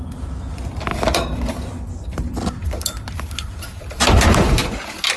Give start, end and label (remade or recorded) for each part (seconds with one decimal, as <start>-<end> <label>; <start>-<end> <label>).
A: 0.0-0.9 recorded; 0.9-4.0 remade; 4.0-4.6 recorded; 4.6-5.2 remade